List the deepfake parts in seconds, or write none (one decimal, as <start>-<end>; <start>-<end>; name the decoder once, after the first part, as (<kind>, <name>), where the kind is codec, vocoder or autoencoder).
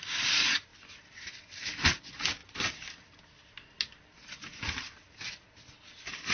none